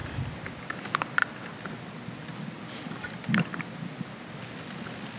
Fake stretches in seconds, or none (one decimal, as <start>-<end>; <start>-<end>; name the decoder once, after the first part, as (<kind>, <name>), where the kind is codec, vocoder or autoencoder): none